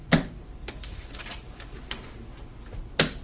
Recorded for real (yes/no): yes